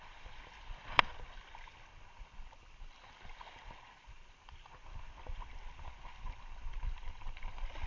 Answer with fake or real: fake